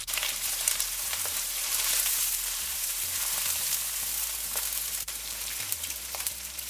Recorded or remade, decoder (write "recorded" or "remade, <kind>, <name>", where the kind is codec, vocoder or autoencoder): remade, vocoder, BigVGAN v2